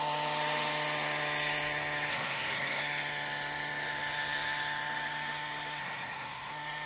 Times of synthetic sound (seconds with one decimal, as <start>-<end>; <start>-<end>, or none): 2.1-2.8; 5.8-6.5